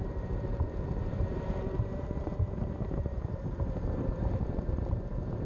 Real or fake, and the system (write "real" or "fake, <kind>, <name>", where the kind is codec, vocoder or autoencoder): fake, vocoder, BigVGAN v2